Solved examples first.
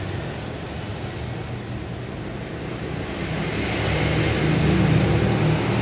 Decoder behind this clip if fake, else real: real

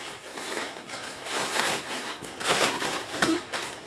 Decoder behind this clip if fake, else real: fake, codec, SNAC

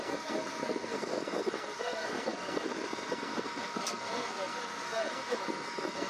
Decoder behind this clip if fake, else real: fake, codec, SNAC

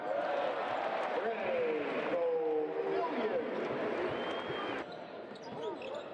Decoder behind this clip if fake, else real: real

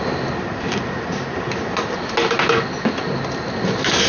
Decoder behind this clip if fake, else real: real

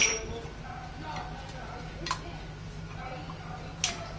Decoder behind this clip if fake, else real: real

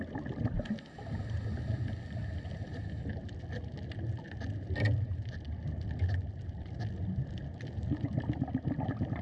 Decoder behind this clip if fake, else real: real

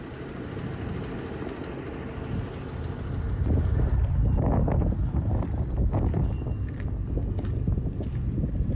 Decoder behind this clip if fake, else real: real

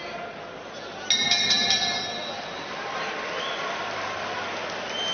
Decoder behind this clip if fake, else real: real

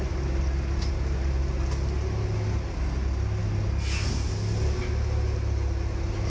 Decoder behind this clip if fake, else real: real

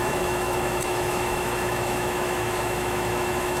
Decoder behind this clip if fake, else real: fake, autoencoder, DAC-VAE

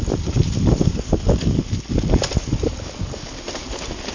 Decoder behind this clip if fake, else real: real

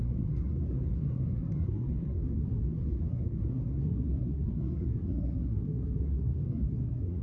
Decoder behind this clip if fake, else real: fake, codec, SNAC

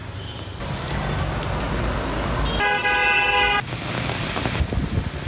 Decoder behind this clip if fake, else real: real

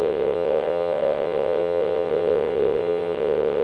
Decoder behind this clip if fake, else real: fake, vocoder, WaveNeXt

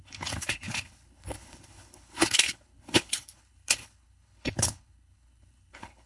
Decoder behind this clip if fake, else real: fake, codec, HILCodec